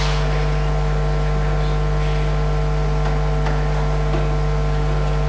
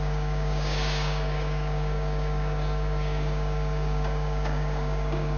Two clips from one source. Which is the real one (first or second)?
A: first